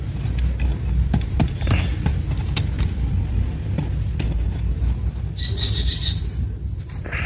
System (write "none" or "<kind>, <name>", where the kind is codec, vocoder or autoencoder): none